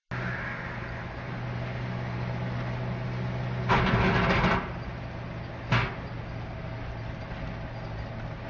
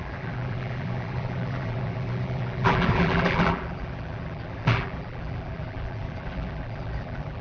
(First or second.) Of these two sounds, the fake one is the second